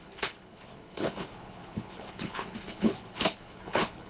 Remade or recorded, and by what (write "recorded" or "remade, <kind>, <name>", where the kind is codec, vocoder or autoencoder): remade, codec, HILCodec